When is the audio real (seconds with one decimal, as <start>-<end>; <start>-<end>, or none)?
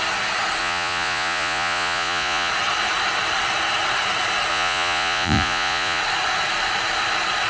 0.0-0.6; 2.5-4.5; 6.0-7.5